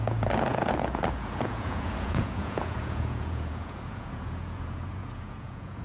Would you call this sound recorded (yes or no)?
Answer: no